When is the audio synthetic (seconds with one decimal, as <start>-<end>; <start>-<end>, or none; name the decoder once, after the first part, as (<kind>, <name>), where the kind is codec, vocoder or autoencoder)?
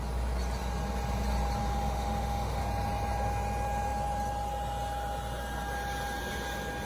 1.6-2.6 (autoencoder, DAC-VAE)